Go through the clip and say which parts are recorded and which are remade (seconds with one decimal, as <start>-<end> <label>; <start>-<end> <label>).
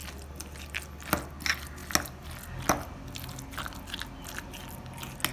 0.0-5.3 recorded